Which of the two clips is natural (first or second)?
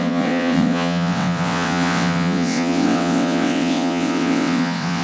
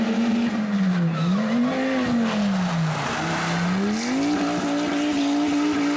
second